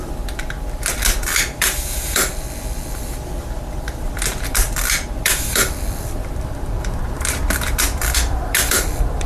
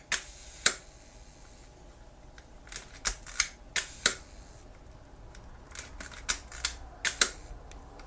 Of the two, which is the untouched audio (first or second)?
second